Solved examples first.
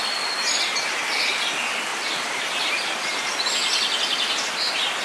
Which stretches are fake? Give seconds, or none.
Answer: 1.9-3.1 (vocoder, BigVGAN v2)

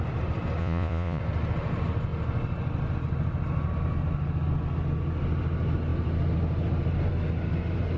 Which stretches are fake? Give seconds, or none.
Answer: 0.6-1.2 (vocoder, Vocos)

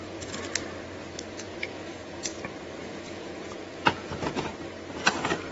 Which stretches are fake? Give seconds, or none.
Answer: 0.0-0.4 (vocoder, Vocos); 1.3-2.3; 2.8-4.5

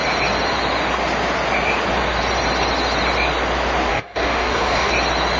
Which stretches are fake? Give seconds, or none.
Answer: 3.9-4.9 (codec, DAC)

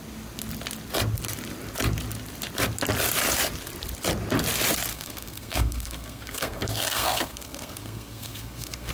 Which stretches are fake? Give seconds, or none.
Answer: 4.9-8.9 (codec, SNAC)